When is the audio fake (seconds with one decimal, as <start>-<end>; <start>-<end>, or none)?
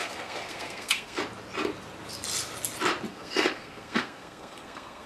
0.0-1.2; 3.1-5.1